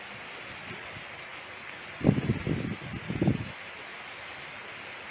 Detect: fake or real real